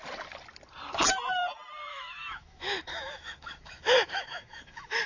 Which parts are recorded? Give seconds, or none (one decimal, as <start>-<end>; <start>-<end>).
0.0-1.9